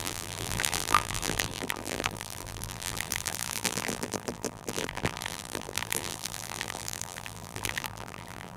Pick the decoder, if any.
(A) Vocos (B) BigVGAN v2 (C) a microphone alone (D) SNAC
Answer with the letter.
B